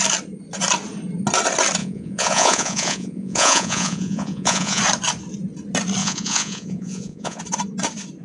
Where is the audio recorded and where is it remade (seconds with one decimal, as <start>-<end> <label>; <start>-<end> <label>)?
0.0-1.8 recorded; 1.8-4.8 remade; 4.8-6.0 recorded; 6.0-7.4 remade; 7.4-8.2 recorded